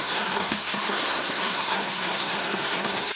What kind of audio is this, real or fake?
fake